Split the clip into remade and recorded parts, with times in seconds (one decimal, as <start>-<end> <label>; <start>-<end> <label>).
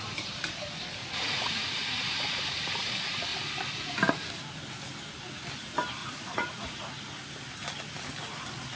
0.0-1.0 recorded; 1.0-2.9 remade; 2.9-6.0 recorded; 6.0-6.9 remade; 6.9-8.8 recorded